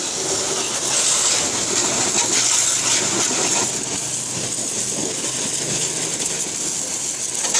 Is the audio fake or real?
real